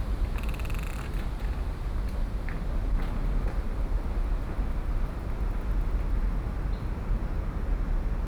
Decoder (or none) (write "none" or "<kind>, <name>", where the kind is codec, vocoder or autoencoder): none